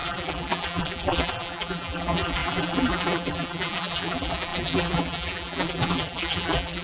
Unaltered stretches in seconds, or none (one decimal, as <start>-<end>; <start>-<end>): none